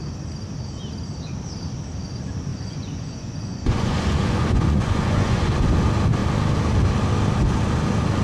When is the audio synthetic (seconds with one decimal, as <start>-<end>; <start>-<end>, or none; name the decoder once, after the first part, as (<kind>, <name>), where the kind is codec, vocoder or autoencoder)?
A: 2.5-5.5 (vocoder, Vocos)